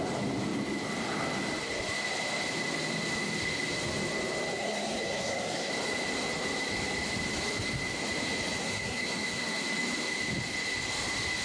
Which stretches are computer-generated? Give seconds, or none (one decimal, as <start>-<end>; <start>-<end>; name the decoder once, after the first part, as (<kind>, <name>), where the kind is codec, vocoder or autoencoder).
4.6-5.7 (codec, SNAC); 8.6-9.6